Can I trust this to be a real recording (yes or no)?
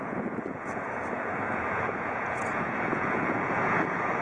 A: no